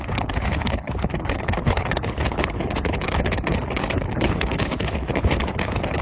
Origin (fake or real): fake